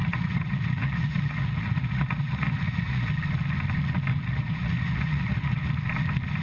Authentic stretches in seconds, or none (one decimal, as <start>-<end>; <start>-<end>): 3.1-4.1; 5.7-6.4